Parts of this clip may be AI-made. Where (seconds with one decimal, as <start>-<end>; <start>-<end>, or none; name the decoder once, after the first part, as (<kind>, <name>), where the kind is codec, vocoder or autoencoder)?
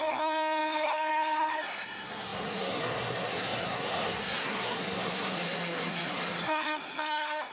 0.0-7.5 (codec, SNAC)